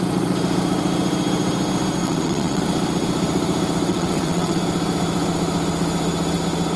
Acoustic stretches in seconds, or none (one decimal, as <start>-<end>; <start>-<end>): 0.0-2.0; 2.6-3.9; 4.6-6.8